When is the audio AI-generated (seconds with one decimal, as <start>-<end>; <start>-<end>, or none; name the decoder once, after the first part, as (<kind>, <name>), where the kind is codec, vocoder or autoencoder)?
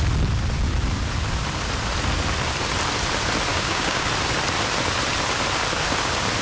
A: 3.5-4.1 (codec, DAC)